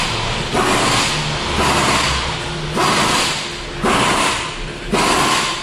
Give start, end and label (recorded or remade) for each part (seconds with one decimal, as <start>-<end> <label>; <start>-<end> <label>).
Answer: 0.0-5.6 recorded